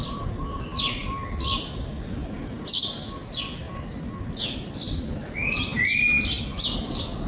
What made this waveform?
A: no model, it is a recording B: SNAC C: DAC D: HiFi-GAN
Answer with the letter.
A